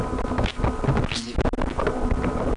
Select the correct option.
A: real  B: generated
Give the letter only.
A